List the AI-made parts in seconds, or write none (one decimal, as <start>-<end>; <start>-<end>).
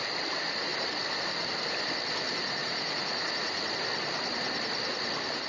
2.6-3.7